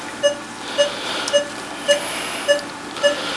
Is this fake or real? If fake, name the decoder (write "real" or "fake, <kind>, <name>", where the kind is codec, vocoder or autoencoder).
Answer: real